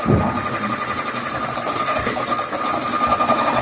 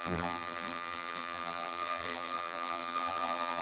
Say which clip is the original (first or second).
first